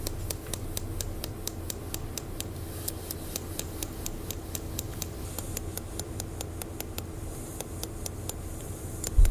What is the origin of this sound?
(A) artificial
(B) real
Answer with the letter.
B